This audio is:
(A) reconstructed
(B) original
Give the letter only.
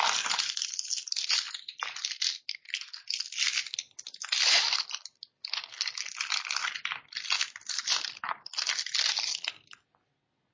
B